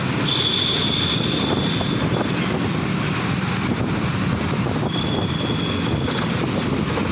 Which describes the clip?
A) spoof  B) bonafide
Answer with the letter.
B